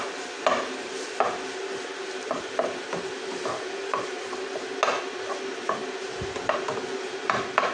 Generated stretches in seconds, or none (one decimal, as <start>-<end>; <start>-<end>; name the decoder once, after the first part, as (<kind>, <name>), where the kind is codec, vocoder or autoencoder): none

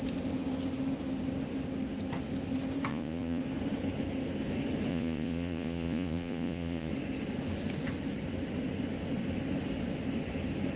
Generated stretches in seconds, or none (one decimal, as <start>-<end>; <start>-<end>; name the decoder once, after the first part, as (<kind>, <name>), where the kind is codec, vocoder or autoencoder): 2.9-3.4 (vocoder, Vocos); 4.9-6.9

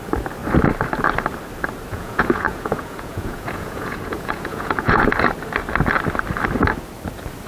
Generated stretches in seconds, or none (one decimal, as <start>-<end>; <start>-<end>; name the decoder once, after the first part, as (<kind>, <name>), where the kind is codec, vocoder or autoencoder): 1.9-5.1 (vocoder, Vocos)